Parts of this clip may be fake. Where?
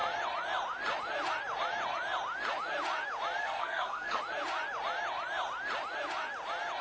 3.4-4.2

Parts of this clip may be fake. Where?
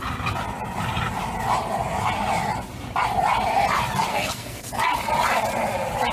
4.1-4.7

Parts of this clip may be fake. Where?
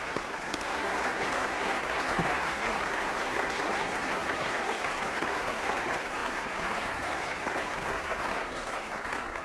0.0-9.4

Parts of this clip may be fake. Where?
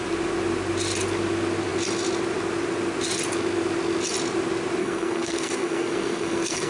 4.8-6.7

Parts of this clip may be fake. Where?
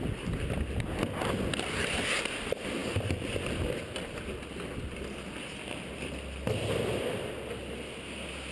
none